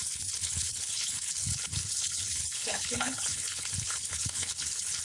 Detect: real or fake fake